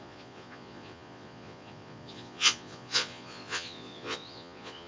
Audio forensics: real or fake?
fake